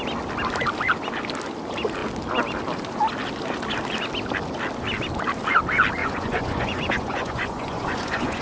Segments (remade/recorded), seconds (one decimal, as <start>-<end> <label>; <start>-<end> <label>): 0.0-6.0 recorded; 6.0-8.4 remade